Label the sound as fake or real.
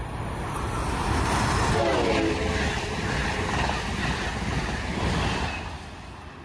real